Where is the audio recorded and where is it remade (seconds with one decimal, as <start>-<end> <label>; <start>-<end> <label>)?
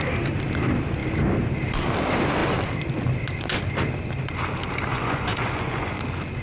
0.0-4.9 recorded; 4.9-5.9 remade; 5.9-6.4 recorded